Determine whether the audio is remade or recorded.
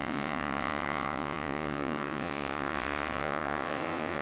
remade